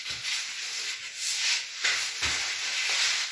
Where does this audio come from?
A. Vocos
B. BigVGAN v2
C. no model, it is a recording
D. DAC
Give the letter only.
C